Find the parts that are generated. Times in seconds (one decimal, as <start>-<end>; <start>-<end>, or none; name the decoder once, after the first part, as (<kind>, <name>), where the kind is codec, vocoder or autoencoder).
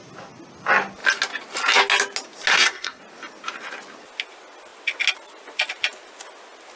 2.5-3.0 (codec, SNAC)